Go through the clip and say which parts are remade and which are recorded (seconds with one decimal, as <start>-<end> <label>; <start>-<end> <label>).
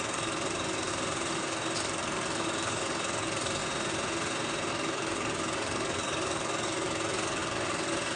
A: 0.0-0.9 remade; 0.9-1.4 recorded; 1.4-3.6 remade; 3.6-4.7 recorded; 4.7-8.2 remade